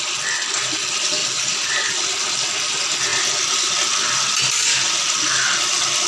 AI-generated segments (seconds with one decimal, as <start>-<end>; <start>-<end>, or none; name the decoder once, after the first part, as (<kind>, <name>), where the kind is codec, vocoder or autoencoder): none